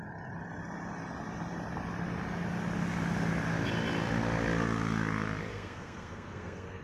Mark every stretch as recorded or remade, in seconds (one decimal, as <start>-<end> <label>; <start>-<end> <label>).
0.0-5.5 recorded; 5.5-6.8 remade